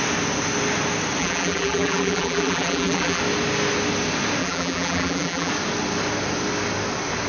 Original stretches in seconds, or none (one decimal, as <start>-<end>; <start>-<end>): 0.0-1.2; 3.2-4.4; 5.5-7.3